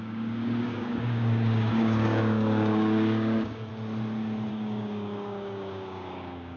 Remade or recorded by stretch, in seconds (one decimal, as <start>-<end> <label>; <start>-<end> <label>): 0.0-3.7 remade; 3.7-4.5 recorded; 4.5-6.6 remade

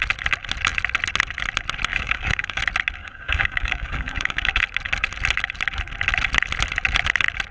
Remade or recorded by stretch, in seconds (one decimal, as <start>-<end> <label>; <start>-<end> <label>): 0.0-1.9 recorded; 1.9-2.6 remade; 2.6-3.0 recorded; 3.0-4.6 remade; 4.6-7.5 recorded